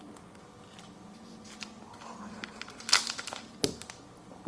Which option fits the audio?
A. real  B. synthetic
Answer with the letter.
A